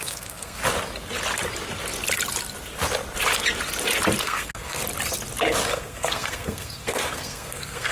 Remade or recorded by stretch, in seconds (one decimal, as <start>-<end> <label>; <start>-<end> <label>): 0.0-0.6 remade; 0.6-4.2 recorded; 4.2-4.8 remade; 4.8-5.7 recorded; 5.7-7.9 remade